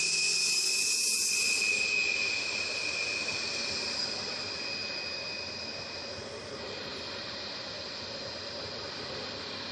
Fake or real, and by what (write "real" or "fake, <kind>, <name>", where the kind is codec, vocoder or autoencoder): real